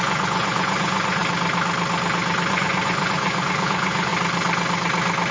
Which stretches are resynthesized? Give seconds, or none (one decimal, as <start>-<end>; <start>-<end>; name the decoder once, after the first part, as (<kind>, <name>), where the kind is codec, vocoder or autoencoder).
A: 0.0-1.2 (vocoder, Vocos); 2.5-4.1